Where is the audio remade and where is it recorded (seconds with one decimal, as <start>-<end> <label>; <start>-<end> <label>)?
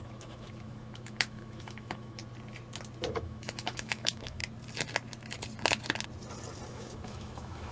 0.0-2.2 remade; 2.2-3.1 recorded; 3.1-4.4 remade; 4.4-6.7 recorded; 6.7-7.7 remade